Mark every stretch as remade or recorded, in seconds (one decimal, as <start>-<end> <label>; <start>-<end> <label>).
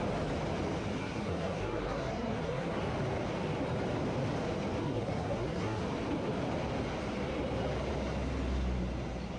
0.0-1.0 recorded; 1.0-2.8 remade; 2.8-4.8 recorded; 4.8-5.8 remade; 5.8-9.4 recorded